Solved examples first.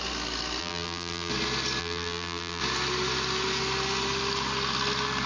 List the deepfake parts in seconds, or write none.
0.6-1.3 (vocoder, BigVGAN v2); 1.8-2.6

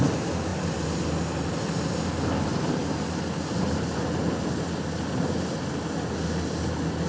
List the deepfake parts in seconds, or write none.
none

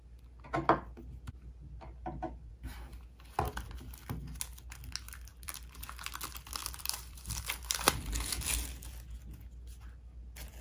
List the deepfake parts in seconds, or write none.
5.3-5.8 (vocoder, BigVGAN v2); 6.6-7.4

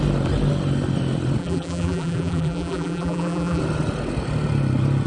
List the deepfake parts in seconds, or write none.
1.4-3.6 (vocoder, BigVGAN v2)

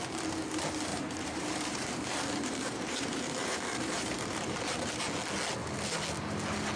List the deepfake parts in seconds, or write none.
0.9-5.0 (vocoder, BigVGAN v2)

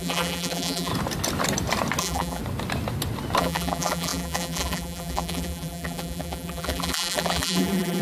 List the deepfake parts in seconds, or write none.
0.0-0.9 (vocoder, BigVGAN v2); 2.0-2.4; 3.4-8.0